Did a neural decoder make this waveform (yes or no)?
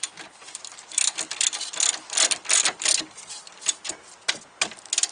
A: no